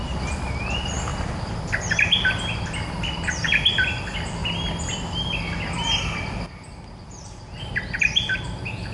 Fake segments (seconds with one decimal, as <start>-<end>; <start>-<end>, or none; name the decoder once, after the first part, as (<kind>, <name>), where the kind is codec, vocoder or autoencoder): 0.0-1.1 (vocoder, BigVGAN v2); 2.6-4.4; 6.2-8.9